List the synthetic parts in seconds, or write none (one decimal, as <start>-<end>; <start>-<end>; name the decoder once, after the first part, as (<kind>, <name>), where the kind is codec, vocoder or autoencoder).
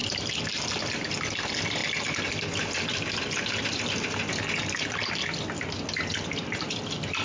0.0-0.5 (vocoder, BigVGAN v2)